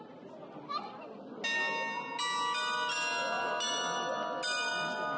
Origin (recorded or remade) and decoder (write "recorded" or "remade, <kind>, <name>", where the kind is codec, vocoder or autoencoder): recorded